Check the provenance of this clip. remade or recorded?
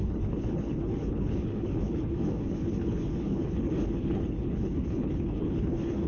remade